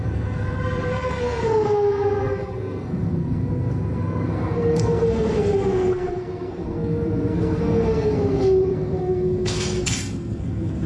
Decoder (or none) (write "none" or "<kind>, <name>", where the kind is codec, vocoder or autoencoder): codec, SNAC